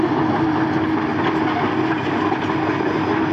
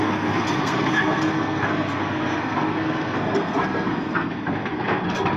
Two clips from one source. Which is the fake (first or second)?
second